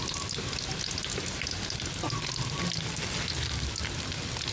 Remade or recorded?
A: recorded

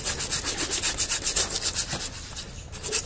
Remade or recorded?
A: recorded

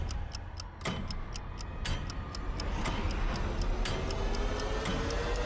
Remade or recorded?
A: recorded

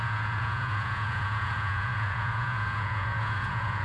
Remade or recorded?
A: remade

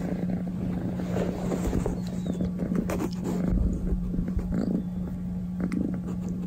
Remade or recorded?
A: recorded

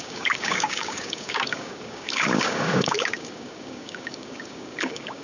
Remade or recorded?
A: remade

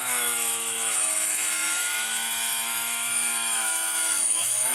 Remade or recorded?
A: remade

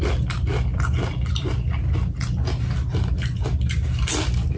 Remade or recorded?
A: recorded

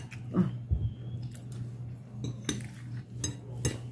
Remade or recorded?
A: recorded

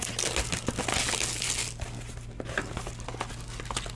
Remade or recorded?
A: recorded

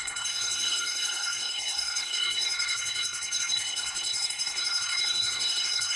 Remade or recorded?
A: remade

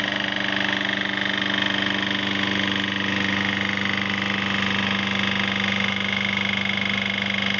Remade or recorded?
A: recorded